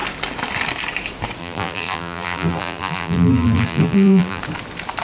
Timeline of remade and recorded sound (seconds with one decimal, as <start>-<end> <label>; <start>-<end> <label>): 0.0-1.4 recorded; 1.4-4.4 remade; 4.4-5.0 recorded

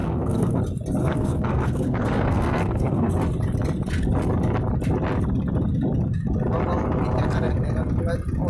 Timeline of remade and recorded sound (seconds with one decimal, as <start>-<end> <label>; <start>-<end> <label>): 0.0-0.6 remade; 0.6-1.0 recorded; 1.0-3.1 remade; 3.1-8.5 recorded

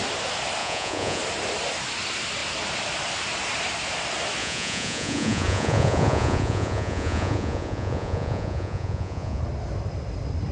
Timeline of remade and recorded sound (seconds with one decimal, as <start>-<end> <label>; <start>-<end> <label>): 0.0-0.6 recorded; 0.6-1.2 remade; 1.2-4.4 recorded; 4.4-9.4 remade; 9.4-10.5 recorded

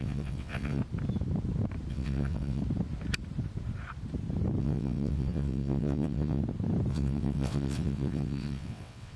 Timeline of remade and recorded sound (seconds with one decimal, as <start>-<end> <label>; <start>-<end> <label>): 0.0-0.8 remade; 0.8-1.9 recorded; 1.9-2.6 remade; 2.6-4.6 recorded; 4.6-6.4 remade; 6.4-6.9 recorded; 6.9-9.2 remade

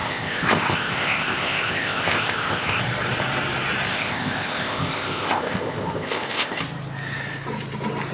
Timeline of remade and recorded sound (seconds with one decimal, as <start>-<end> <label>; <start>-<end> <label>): 0.0-2.8 remade; 2.8-3.9 recorded; 3.9-6.6 remade; 6.6-8.1 recorded

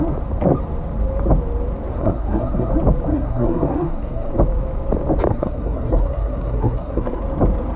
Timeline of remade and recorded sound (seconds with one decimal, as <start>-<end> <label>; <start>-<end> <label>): 0.0-1.9 recorded; 1.9-2.7 remade; 2.7-3.1 recorded; 3.1-4.3 remade; 4.3-5.3 recorded; 5.3-7.2 remade; 7.2-7.8 recorded

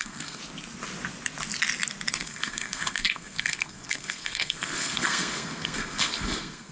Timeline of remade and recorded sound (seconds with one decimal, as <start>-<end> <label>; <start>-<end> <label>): 0.0-0.4 remade; 0.4-2.1 recorded; 2.1-6.7 remade

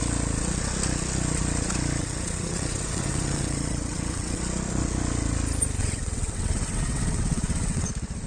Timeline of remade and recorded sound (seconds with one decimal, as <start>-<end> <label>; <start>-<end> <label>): 0.0-2.0 recorded; 2.0-4.4 remade; 4.4-5.8 recorded; 5.8-7.9 remade; 7.9-8.3 recorded